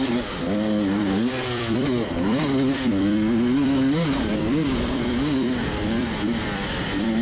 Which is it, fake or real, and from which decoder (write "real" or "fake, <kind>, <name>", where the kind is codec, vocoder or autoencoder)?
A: fake, vocoder, BigVGAN v2